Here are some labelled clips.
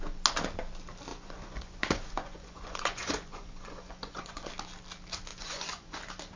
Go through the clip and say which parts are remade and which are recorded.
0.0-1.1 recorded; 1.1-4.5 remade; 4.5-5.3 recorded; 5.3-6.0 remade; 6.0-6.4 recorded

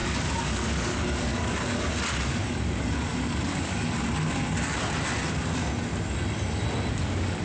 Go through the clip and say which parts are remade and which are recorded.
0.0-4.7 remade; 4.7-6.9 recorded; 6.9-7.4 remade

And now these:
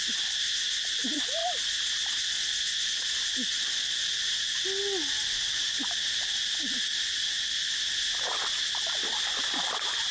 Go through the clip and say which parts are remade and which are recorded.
0.0-10.1 recorded

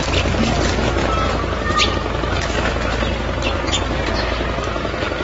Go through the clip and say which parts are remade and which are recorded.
0.0-5.2 recorded

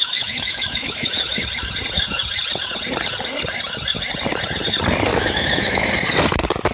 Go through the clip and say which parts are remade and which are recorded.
0.0-1.4 remade; 1.4-5.1 recorded; 5.1-5.9 remade; 5.9-6.7 recorded

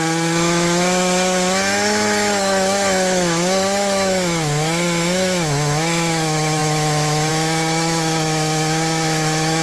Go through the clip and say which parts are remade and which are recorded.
0.0-9.6 remade